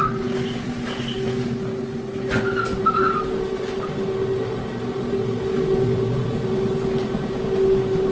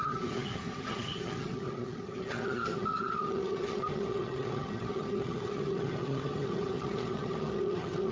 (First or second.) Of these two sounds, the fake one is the second